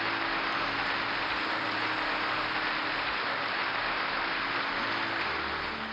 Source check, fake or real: fake